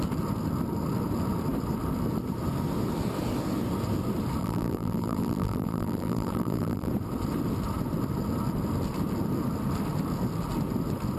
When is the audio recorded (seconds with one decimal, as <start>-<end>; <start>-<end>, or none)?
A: 0.0-4.4; 6.9-11.2